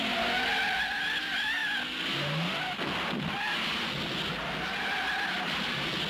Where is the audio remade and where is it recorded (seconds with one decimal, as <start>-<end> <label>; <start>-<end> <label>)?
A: 0.0-6.1 recorded